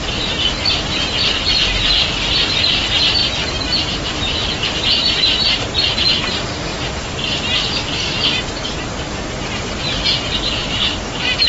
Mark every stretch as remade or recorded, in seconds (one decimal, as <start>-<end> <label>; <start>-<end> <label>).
0.0-3.2 recorded; 3.2-4.9 remade; 4.9-11.5 recorded